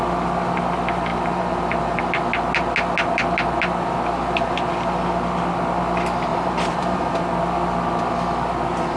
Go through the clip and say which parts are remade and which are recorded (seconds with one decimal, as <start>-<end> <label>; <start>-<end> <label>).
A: 0.0-1.1 recorded; 1.1-2.0 remade; 2.0-6.3 recorded; 6.3-7.0 remade; 7.0-9.0 recorded